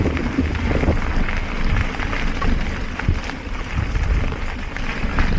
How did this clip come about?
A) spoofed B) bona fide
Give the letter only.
B